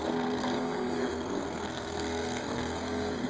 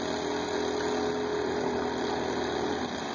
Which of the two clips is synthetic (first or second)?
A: first